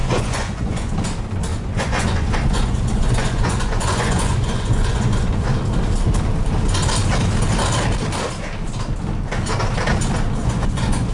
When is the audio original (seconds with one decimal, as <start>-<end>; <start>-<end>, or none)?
0.9-1.5; 5.5-10.4